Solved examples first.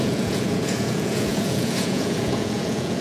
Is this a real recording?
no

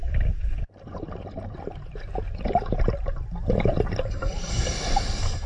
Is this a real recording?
yes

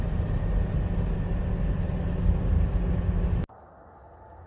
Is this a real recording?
yes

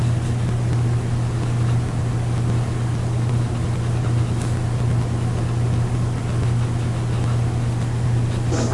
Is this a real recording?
yes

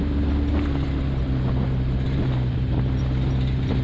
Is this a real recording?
yes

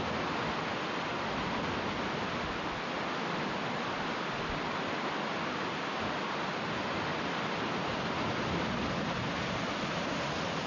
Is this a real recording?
yes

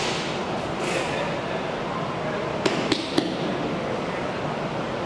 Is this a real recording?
yes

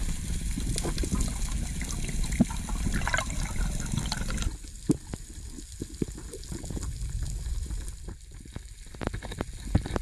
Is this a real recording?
yes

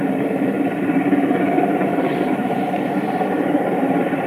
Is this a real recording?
no